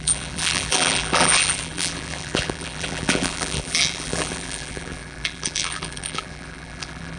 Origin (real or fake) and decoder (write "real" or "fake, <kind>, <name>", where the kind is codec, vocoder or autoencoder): fake, vocoder, BigVGAN v2